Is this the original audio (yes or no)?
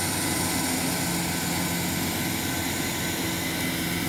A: yes